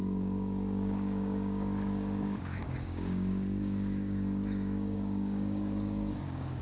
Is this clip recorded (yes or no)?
no